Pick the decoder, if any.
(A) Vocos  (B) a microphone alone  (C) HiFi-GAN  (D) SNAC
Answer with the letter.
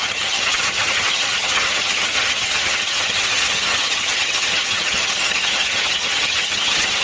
C